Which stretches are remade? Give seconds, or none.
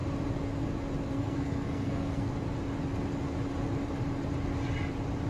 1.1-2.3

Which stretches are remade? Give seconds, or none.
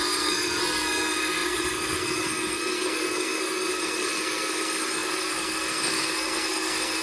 0.0-7.0